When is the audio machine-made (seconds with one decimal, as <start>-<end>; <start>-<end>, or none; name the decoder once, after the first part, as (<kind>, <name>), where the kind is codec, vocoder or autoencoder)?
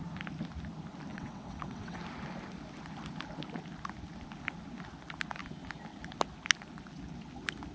1.1-2.0 (vocoder, WaveNeXt)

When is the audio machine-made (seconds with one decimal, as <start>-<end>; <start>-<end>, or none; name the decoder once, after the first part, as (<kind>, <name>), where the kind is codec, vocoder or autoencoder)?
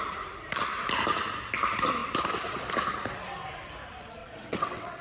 4.2-5.0 (vocoder, WaveNeXt)